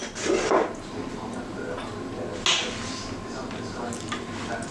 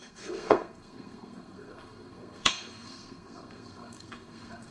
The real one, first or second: first